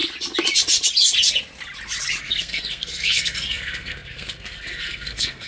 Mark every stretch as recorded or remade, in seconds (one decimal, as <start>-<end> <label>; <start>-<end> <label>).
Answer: 0.0-2.2 recorded; 2.2-5.5 remade

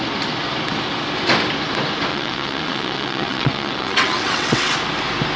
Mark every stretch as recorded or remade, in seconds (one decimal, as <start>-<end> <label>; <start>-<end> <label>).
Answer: 0.0-2.1 recorded; 2.1-4.7 remade; 4.7-5.4 recorded

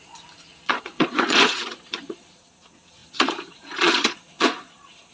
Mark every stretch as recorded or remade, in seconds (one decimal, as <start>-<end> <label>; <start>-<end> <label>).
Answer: 0.0-5.1 remade

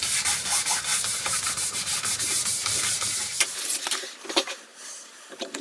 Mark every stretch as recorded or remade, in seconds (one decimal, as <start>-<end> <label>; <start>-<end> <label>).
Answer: 0.0-0.9 recorded; 0.9-3.9 remade; 3.9-4.7 recorded; 4.7-5.6 remade

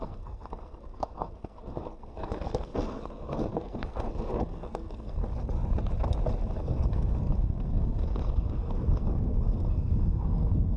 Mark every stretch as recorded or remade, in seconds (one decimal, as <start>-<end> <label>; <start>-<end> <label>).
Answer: 0.0-5.2 remade; 5.2-6.6 recorded; 6.6-10.8 remade

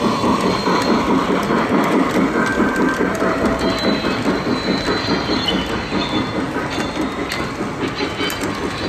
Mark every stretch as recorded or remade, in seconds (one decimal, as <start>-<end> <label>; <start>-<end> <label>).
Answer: 0.0-2.5 recorded; 2.5-4.5 remade; 4.5-8.9 recorded